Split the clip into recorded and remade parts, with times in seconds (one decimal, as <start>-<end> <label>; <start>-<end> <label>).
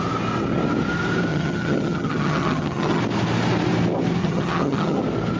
0.0-1.3 recorded; 1.3-3.0 remade; 3.0-4.2 recorded; 4.2-5.0 remade; 5.0-5.4 recorded